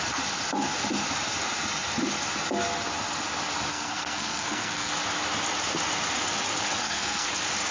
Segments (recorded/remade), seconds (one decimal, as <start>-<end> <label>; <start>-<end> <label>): 0.0-3.7 recorded; 3.7-4.9 remade; 4.9-6.8 recorded; 6.8-7.3 remade; 7.3-7.7 recorded